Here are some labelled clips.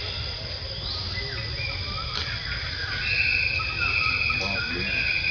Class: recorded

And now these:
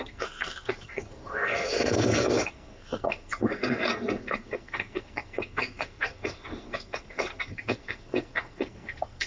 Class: remade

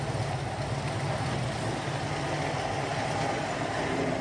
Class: recorded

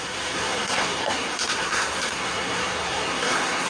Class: remade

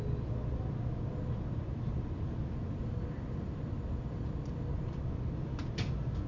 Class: recorded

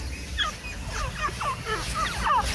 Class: recorded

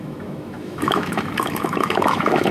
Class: remade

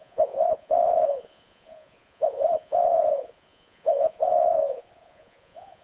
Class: remade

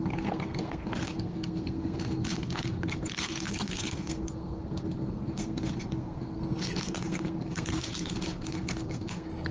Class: remade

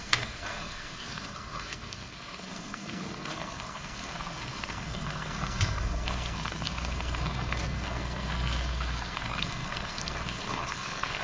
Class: remade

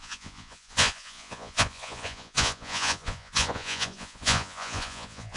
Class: remade